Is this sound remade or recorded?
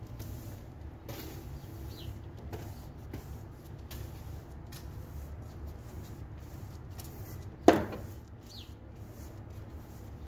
recorded